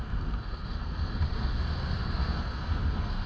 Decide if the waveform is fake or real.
fake